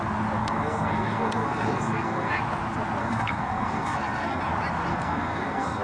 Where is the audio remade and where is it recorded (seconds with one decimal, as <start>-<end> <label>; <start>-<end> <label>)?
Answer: 0.0-0.4 recorded; 0.4-2.3 remade; 2.3-3.0 recorded; 3.0-4.4 remade; 4.4-4.9 recorded; 4.9-5.8 remade